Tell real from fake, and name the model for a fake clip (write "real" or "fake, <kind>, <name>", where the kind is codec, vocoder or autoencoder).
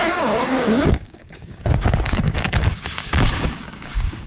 fake, codec, DAC